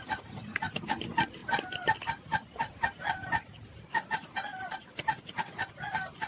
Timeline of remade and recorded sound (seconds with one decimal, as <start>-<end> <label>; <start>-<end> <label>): 0.0-1.4 recorded; 1.4-5.2 remade; 5.2-6.3 recorded